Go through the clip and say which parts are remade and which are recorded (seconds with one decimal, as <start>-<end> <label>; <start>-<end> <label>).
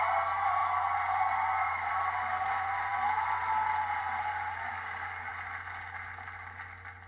0.0-4.7 recorded; 4.7-5.3 remade; 5.3-7.1 recorded